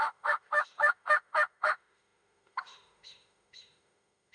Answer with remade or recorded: remade